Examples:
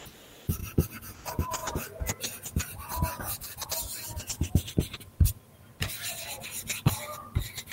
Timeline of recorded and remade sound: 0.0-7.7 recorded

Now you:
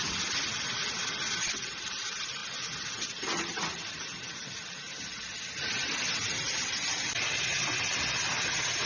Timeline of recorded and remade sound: 0.0-8.9 recorded

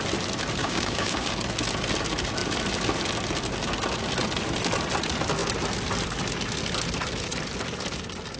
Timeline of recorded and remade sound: 0.0-0.6 recorded; 0.6-1.3 remade; 1.3-8.4 recorded